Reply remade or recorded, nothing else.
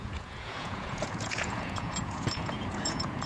remade